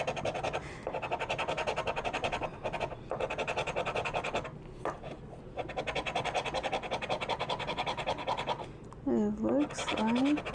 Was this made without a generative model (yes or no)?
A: yes